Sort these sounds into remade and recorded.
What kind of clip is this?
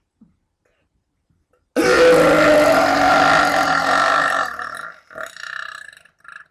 recorded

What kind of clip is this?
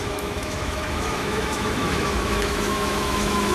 remade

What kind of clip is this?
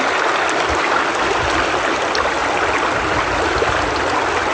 recorded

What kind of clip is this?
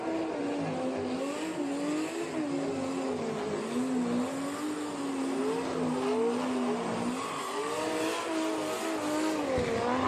recorded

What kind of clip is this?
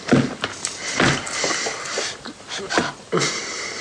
recorded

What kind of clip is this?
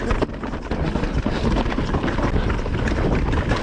recorded